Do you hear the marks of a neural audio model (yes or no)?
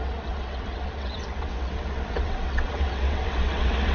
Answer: yes